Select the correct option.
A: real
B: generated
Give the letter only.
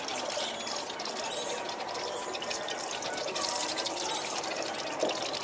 A